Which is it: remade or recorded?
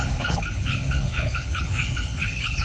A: remade